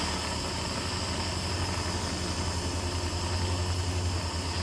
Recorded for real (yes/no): yes